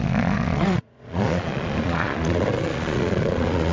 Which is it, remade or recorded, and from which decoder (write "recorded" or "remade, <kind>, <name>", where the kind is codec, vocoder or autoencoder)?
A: remade, vocoder, Vocos